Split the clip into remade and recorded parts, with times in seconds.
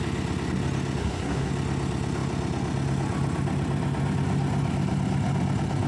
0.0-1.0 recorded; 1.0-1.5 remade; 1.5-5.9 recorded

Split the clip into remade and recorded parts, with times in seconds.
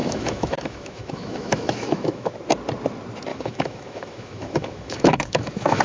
0.0-2.3 remade; 2.3-3.3 recorded; 3.3-5.8 remade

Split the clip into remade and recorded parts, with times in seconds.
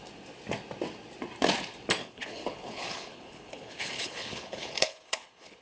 0.0-2.0 recorded; 2.0-5.6 remade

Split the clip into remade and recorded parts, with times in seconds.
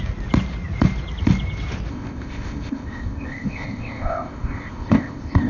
0.0-1.9 recorded; 1.9-5.5 remade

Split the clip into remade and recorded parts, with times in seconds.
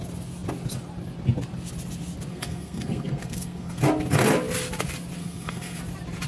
0.0-2.3 recorded; 2.3-3.8 remade; 3.8-5.2 recorded; 5.2-5.8 remade; 5.8-6.3 recorded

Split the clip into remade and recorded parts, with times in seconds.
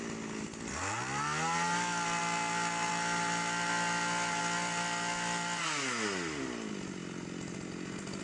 0.0-8.2 recorded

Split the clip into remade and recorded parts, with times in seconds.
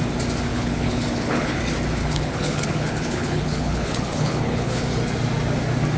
0.0-0.5 recorded; 0.5-1.6 remade; 1.6-2.0 recorded; 2.0-4.8 remade; 4.8-6.0 recorded